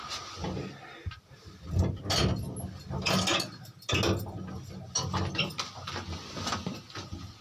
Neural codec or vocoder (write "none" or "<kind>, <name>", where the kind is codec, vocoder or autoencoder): none